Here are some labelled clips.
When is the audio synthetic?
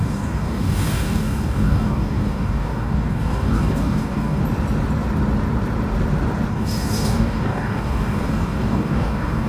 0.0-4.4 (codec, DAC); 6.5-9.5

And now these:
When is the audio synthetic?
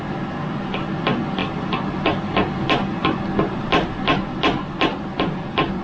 none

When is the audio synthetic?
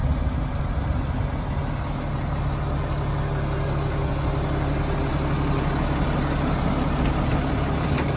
none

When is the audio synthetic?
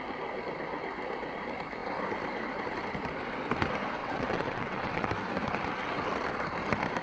4.0-5.1 (vocoder, WaveNeXt)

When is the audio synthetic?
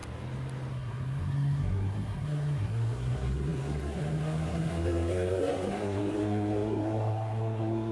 0.7-7.9 (codec, SNAC)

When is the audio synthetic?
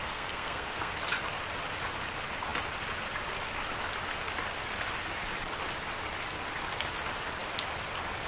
0.0-0.9 (codec, SNAC)